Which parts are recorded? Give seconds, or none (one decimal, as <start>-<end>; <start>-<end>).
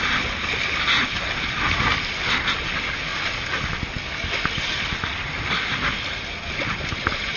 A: 0.0-7.4